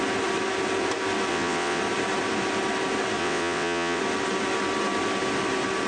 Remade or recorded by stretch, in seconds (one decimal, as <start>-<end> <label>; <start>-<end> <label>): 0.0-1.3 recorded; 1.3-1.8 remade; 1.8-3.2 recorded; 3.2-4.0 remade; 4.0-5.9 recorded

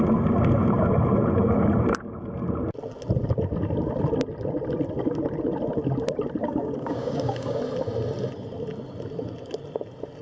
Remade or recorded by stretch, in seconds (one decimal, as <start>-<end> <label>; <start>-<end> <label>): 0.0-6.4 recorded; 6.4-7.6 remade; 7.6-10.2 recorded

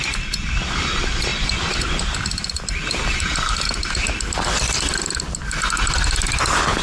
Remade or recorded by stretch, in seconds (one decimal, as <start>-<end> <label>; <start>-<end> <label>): 0.0-6.8 recorded